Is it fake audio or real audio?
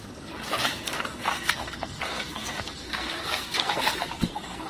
fake